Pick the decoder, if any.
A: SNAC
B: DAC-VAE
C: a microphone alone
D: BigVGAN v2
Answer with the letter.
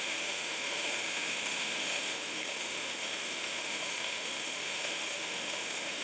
B